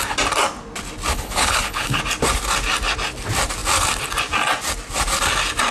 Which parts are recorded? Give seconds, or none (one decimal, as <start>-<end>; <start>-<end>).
0.0-1.1; 2.0-5.7